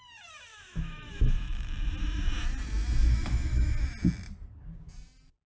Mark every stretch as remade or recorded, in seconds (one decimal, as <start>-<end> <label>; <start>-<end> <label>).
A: 0.0-0.5 recorded; 0.5-1.7 remade; 1.7-3.0 recorded; 3.0-3.7 remade; 3.7-5.4 recorded

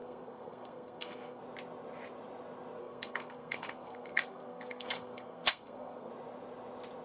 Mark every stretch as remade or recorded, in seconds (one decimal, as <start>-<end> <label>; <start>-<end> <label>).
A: 0.0-1.4 remade; 1.4-2.8 recorded; 2.8-6.1 remade; 6.1-7.0 recorded

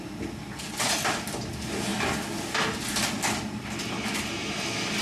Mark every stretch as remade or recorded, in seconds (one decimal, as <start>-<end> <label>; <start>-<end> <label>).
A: 0.0-5.0 recorded

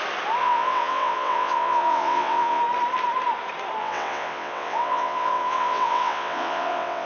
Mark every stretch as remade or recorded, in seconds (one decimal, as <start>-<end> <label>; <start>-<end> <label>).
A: 0.0-0.4 recorded; 0.4-2.6 remade; 2.6-3.8 recorded; 3.8-7.1 remade

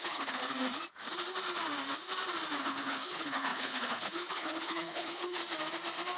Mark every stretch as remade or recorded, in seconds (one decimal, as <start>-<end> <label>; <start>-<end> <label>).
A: 0.0-0.4 remade; 0.4-2.6 recorded; 2.6-5.4 remade; 5.4-6.2 recorded

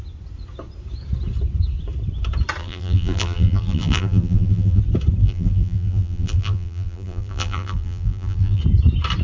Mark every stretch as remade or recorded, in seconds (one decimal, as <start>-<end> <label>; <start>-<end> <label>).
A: 0.0-2.6 recorded; 2.6-4.8 remade; 4.8-5.2 recorded; 5.2-8.6 remade; 8.6-9.2 recorded

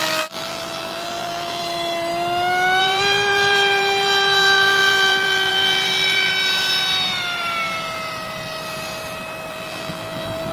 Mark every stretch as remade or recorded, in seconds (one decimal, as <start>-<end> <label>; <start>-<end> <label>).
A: 0.0-1.6 remade; 1.6-2.8 recorded; 2.8-6.3 remade; 6.3-9.5 recorded; 9.5-10.5 remade